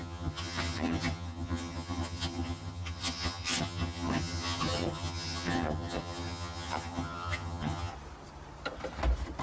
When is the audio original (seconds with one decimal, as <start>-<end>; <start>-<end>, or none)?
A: 7.9-9.4